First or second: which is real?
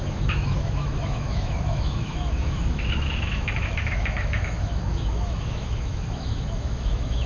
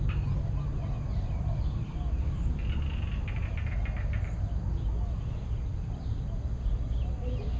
second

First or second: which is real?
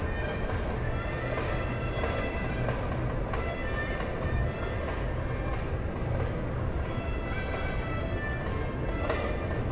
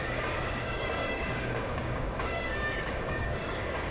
first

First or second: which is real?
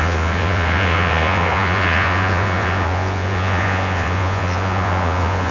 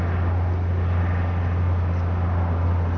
second